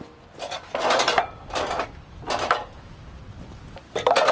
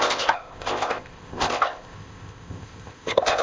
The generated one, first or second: second